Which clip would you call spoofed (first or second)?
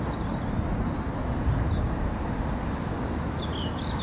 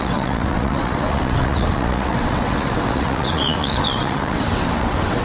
second